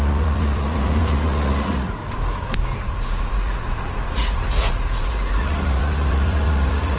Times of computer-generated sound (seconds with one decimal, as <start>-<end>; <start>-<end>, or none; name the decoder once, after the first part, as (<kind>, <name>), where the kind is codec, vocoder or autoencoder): 0.0-2.0 (vocoder, Vocos); 2.8-7.0